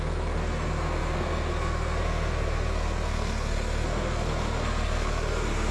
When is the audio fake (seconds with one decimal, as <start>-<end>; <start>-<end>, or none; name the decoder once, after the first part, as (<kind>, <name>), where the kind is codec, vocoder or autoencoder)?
0.0-5.7 (codec, SNAC)